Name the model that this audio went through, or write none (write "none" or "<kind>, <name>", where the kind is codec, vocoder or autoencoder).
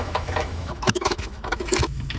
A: autoencoder, DAC-VAE